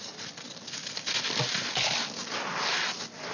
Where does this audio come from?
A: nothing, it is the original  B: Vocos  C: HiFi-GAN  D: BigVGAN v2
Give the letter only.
A